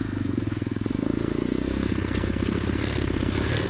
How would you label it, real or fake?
fake